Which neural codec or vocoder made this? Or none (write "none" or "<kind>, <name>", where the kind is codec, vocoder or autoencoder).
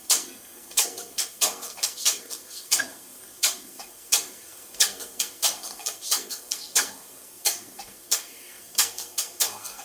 codec, SNAC